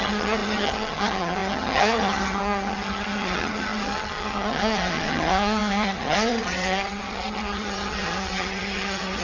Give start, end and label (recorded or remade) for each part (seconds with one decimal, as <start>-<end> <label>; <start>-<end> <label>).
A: 0.0-9.2 remade

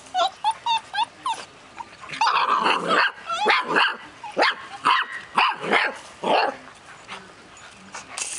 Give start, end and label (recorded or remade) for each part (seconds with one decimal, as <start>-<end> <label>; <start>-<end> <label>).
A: 0.0-3.9 recorded; 3.9-4.5 remade; 4.5-8.4 recorded

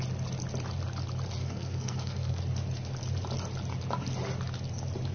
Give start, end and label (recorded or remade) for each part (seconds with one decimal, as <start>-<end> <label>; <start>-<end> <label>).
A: 0.0-1.4 recorded; 1.4-2.4 remade; 2.4-5.1 recorded

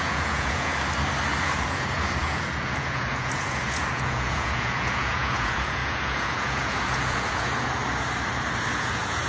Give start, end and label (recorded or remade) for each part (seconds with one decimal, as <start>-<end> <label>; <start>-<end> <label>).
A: 0.0-0.7 remade; 0.7-1.4 recorded; 1.4-7.8 remade; 7.8-8.7 recorded; 8.7-9.3 remade

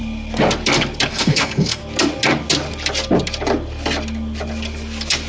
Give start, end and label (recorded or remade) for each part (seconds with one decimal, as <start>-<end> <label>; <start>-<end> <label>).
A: 0.0-1.1 recorded; 1.1-1.8 remade; 1.8-5.3 recorded

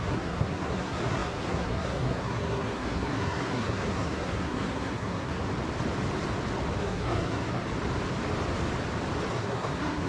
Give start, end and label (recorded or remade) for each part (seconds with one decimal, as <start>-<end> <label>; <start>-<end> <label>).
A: 0.0-5.5 remade; 5.5-6.8 recorded; 6.8-7.6 remade; 7.6-9.3 recorded; 9.3-10.1 remade

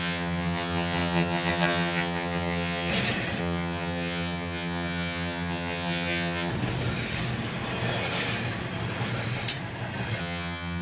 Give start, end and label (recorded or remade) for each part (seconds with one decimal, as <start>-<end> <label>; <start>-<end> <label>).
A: 0.0-2.9 remade; 2.9-3.4 recorded; 3.4-6.5 remade; 6.5-10.2 recorded; 10.2-10.8 remade

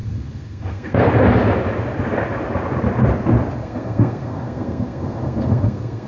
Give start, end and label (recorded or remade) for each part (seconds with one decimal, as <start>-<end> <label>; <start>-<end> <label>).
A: 0.0-1.1 remade; 1.1-3.6 recorded; 3.6-6.1 remade